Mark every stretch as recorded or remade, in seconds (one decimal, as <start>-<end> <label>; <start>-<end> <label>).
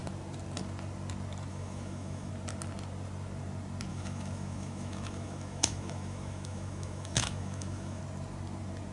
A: 0.0-1.5 recorded; 1.5-2.3 remade; 2.3-3.9 recorded; 3.9-8.0 remade; 8.0-8.9 recorded